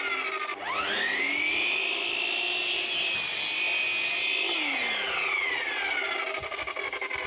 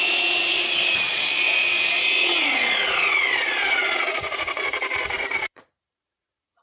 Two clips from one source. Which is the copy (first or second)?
second